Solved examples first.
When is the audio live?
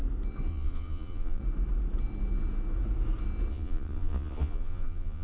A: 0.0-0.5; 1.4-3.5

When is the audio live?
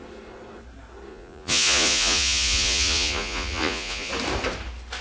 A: 0.0-1.1; 4.1-5.0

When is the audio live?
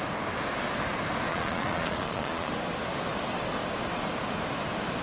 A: 0.0-1.3; 2.5-5.0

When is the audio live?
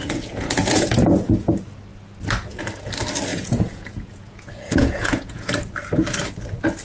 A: 1.5-3.3; 5.6-6.8